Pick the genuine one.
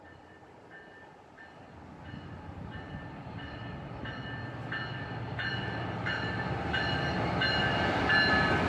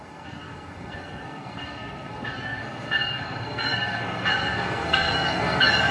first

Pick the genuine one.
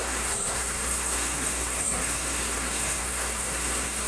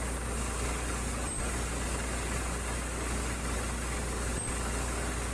second